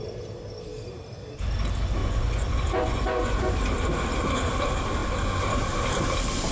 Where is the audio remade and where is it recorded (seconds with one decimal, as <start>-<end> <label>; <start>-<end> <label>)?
0.0-2.0 recorded; 2.0-3.5 remade; 3.5-6.5 recorded